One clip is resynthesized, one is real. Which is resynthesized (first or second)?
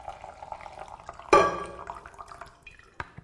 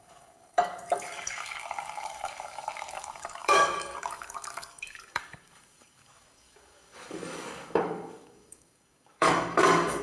second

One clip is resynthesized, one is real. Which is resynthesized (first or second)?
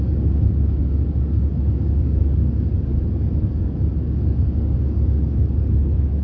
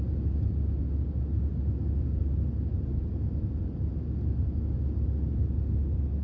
first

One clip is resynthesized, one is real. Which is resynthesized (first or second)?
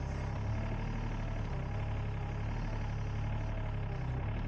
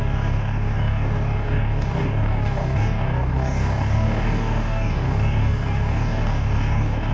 second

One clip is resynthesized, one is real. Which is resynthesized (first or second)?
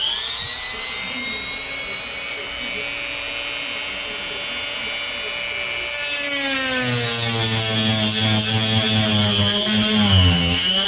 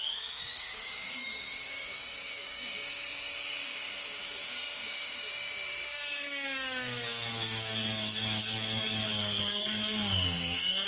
second